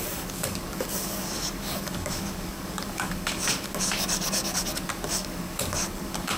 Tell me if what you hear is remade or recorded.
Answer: remade